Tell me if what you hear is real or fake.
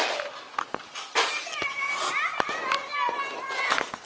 real